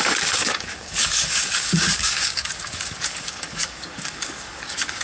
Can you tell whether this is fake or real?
fake